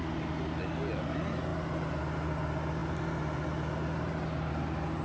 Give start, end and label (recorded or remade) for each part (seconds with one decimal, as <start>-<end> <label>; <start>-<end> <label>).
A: 0.0-5.0 recorded